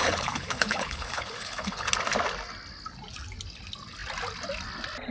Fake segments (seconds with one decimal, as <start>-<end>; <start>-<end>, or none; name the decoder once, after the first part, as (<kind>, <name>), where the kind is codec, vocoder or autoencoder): 0.0-1.9 (codec, HILCodec)